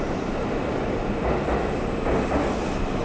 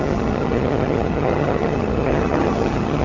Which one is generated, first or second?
second